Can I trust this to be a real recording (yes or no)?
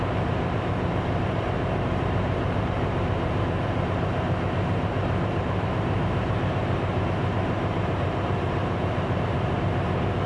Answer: no